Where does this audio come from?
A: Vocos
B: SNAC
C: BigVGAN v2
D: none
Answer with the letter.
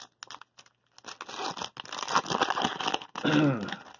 D